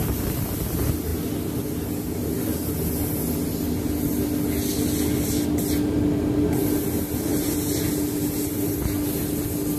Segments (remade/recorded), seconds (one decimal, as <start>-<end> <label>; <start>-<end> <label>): 0.0-9.8 recorded